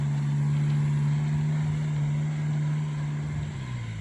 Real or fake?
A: real